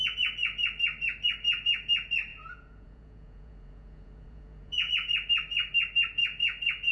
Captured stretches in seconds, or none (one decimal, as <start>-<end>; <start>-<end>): 0.0-2.3; 4.9-6.9